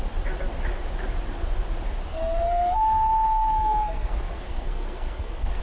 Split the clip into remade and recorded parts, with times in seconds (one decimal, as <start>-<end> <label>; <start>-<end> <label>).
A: 0.0-2.1 recorded; 2.1-5.6 remade